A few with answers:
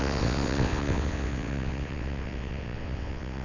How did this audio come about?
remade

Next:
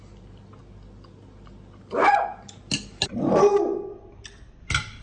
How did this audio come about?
recorded